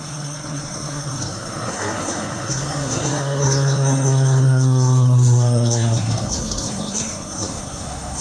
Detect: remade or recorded remade